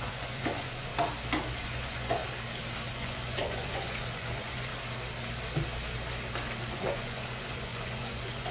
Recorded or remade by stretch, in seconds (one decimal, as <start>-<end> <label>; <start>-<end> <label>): 0.0-0.9 remade; 0.9-1.5 recorded; 1.5-2.2 remade; 2.2-2.9 recorded; 2.9-4.7 remade; 4.7-6.7 recorded; 6.7-8.5 remade